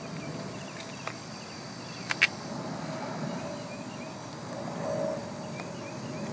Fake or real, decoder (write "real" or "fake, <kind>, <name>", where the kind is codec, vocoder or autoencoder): real